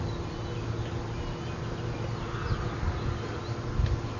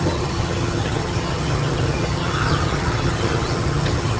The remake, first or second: second